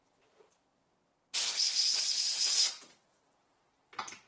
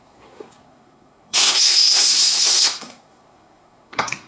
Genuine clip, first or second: first